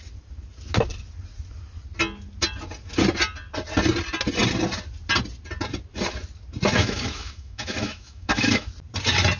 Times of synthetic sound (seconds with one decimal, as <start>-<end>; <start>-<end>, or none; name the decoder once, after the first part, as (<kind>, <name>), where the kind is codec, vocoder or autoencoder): 6.8-8.7 (autoencoder, DAC-VAE)

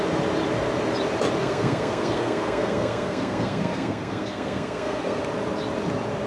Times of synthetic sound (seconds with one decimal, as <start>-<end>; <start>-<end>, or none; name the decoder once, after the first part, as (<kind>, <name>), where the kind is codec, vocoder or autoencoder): 1.4-5.2 (codec, SNAC)

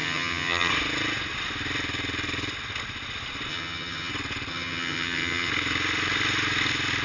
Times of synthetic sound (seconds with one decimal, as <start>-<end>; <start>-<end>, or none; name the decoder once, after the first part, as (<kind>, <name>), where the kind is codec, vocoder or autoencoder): 0.0-0.7 (vocoder, HiFi-GAN); 3.5-4.1; 4.5-5.5